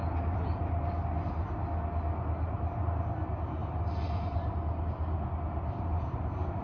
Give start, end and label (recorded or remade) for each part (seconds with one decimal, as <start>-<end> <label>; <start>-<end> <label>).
0.0-6.6 recorded